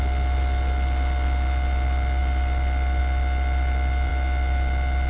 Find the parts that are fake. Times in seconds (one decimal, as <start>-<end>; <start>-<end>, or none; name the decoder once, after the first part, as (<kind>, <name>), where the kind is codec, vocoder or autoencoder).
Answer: 2.2-3.0 (vocoder, BigVGAN v2)